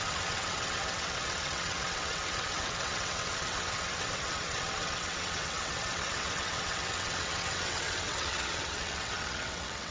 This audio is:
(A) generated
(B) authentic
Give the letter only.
A